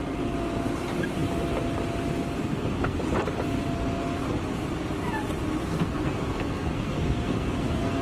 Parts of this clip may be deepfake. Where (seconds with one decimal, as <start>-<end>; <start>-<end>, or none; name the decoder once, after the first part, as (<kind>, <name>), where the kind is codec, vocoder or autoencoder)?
2.5-3.0 (codec, SNAC); 5.6-8.0